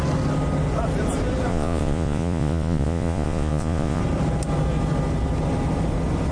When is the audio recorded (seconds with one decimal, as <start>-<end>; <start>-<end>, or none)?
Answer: 0.0-1.5; 4.0-6.3